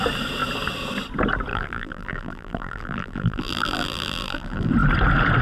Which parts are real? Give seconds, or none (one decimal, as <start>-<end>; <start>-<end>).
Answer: 0.0-1.5; 4.7-5.4